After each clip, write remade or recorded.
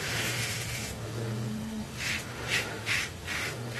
remade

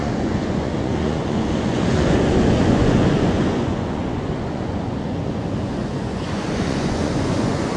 remade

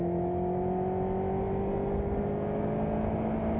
recorded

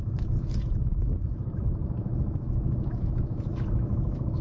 remade